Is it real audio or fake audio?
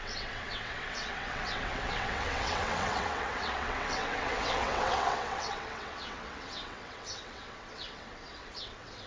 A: fake